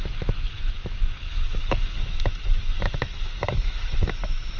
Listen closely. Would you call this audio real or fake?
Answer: fake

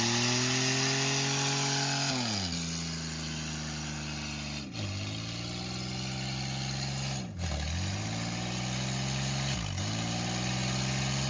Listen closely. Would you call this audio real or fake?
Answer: real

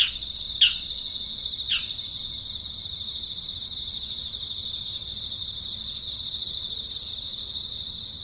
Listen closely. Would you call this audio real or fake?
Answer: real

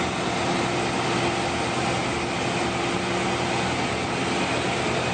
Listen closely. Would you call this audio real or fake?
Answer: real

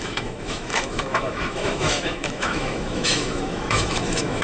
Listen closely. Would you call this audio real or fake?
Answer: fake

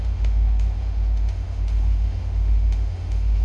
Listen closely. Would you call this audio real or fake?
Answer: fake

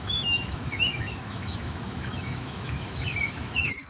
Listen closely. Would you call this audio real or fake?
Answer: fake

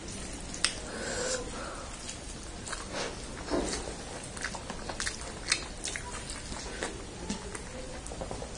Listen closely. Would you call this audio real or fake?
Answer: real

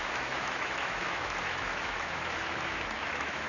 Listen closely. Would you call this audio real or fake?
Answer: fake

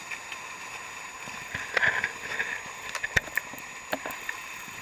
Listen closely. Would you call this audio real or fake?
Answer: real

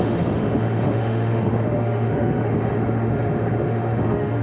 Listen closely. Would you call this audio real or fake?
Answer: fake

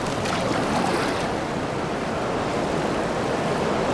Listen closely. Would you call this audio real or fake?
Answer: real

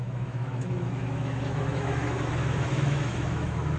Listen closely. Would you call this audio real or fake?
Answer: fake